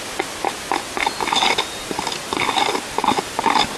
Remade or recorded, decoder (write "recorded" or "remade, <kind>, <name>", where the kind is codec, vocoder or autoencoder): recorded